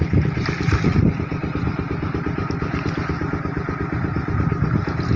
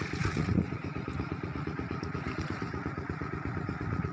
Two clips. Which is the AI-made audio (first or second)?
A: second